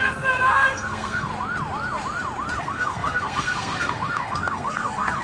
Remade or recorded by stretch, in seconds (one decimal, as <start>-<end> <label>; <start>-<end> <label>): 0.0-1.3 remade; 1.3-2.6 recorded; 2.6-5.2 remade